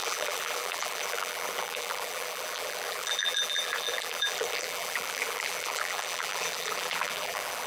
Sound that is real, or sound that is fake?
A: fake